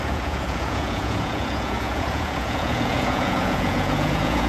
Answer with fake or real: fake